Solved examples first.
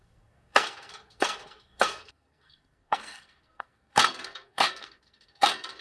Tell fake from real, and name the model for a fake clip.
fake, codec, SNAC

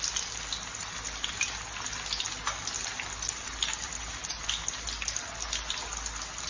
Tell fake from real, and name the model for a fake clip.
real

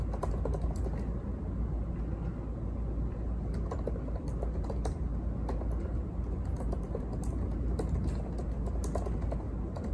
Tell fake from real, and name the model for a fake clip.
real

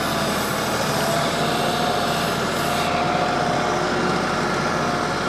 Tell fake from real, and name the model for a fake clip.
real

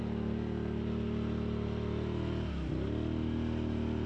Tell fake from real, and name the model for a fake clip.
real